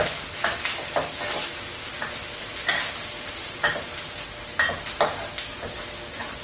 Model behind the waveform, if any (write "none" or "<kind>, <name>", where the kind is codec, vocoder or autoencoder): none